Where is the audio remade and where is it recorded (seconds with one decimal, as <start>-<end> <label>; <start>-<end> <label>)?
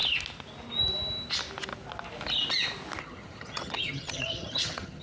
0.0-3.0 recorded; 3.0-5.0 remade